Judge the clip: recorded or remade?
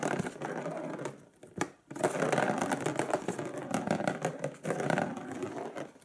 recorded